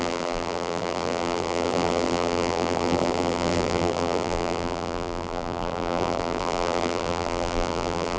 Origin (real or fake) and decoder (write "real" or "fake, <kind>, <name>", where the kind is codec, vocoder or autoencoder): fake, vocoder, BigVGAN v2